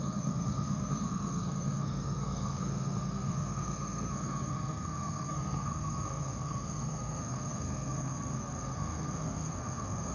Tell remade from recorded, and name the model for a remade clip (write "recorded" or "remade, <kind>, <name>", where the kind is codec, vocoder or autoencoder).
remade, codec, SNAC